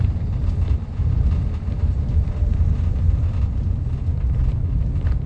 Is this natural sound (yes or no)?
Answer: yes